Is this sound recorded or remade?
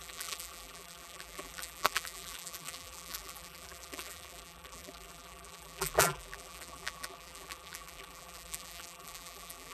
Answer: remade